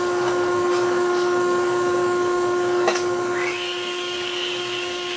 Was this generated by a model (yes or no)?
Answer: yes